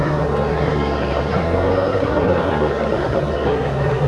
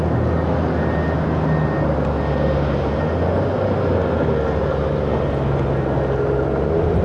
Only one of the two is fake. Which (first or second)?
first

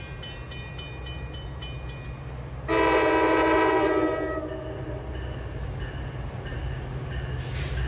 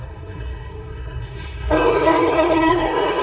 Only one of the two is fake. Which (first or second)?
second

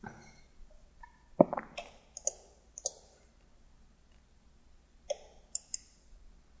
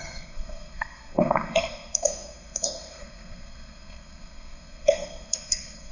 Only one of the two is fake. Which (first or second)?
second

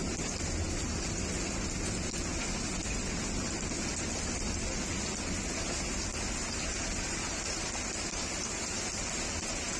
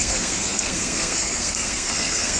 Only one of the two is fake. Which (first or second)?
second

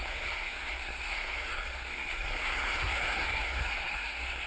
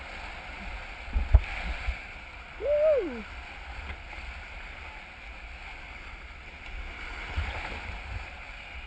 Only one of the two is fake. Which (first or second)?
first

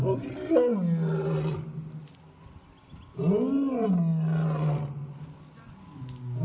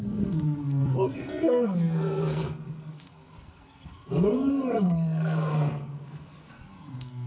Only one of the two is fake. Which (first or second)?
second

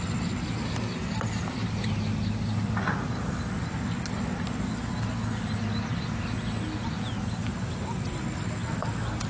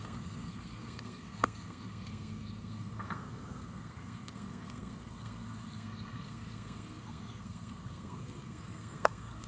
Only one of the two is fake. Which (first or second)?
second